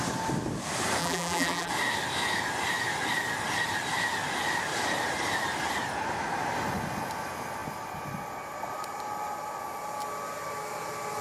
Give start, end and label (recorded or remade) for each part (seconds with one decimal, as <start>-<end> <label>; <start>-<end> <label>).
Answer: 0.0-1.0 recorded; 1.0-1.7 remade; 1.7-11.2 recorded

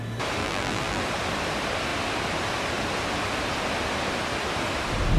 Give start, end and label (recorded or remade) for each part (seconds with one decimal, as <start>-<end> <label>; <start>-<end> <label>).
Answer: 0.0-0.4 recorded; 0.4-1.0 remade; 1.0-5.2 recorded

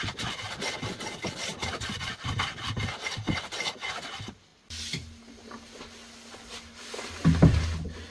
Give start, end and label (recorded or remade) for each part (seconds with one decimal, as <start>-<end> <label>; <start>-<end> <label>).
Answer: 0.0-8.1 recorded

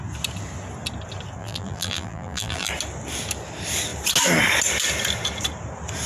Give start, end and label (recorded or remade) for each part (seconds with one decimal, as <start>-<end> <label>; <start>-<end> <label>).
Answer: 0.0-1.4 recorded; 1.4-2.7 remade; 2.7-6.1 recorded

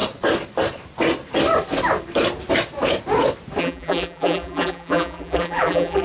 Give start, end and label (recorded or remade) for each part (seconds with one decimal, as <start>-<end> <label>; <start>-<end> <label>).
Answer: 0.0-3.6 recorded; 3.6-6.0 remade

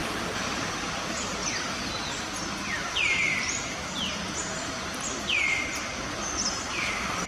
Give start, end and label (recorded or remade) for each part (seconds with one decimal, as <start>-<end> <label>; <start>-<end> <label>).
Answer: 0.0-7.3 recorded